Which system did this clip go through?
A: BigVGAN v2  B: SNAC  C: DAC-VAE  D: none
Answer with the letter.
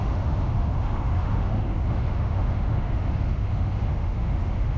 C